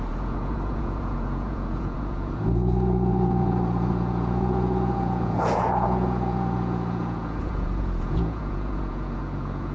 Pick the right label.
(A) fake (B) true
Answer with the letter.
A